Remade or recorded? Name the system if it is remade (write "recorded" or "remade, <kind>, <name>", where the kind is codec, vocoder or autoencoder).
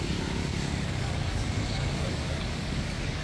remade, codec, DAC